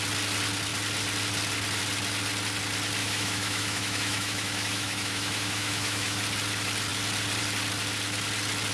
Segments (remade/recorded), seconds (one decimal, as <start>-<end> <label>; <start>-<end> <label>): 0.0-3.0 recorded; 3.0-6.2 remade; 6.2-8.7 recorded